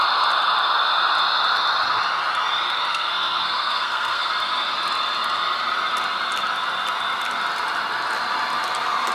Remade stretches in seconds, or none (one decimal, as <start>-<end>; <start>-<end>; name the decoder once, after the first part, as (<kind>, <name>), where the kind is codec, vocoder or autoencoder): 2.9-4.3 (codec, SNAC)